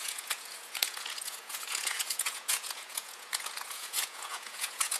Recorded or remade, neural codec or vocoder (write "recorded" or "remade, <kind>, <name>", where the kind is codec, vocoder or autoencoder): remade, vocoder, Vocos